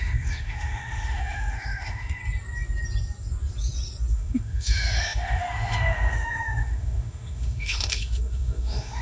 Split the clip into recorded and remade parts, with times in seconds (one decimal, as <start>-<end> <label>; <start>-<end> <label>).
0.0-2.2 remade; 2.2-4.1 recorded; 4.1-9.0 remade